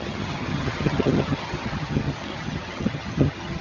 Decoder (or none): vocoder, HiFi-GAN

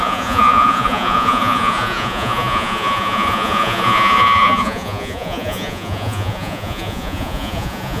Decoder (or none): vocoder, Vocos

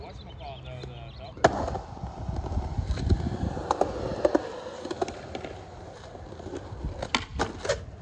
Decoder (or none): none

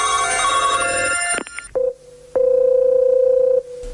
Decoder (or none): none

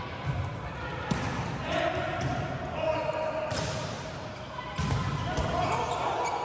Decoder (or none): none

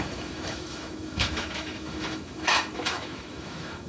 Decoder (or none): autoencoder, DAC-VAE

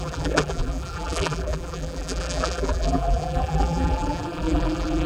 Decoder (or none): vocoder, BigVGAN v2